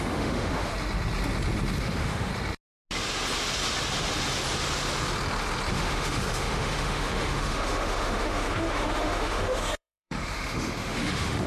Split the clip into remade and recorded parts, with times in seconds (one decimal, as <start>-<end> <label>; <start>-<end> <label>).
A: 0.0-0.7 remade; 0.7-1.8 recorded; 1.8-2.3 remade; 2.3-5.7 recorded; 5.7-11.5 remade